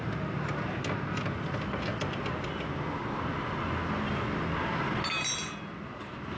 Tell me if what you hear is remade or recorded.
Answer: recorded